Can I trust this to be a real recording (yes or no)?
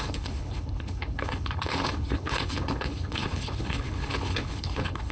no